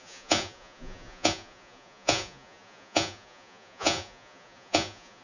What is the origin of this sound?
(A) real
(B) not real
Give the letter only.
B